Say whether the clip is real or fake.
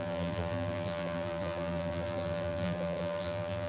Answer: fake